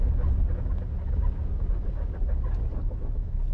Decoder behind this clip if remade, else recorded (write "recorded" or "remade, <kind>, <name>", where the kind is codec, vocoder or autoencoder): recorded